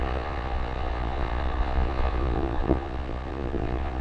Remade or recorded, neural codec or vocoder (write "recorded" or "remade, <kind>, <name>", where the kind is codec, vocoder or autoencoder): remade, vocoder, Vocos